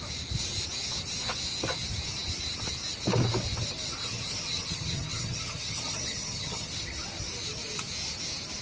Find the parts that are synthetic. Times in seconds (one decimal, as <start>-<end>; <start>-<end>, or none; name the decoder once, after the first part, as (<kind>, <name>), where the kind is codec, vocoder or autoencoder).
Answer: 4.0-6.7 (vocoder, HiFi-GAN)